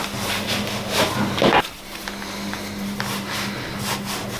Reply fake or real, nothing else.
real